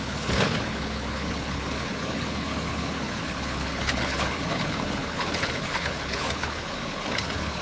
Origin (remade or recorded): remade